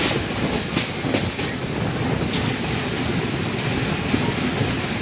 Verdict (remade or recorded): recorded